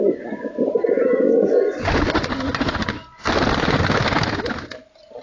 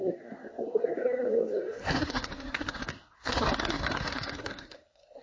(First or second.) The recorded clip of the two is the first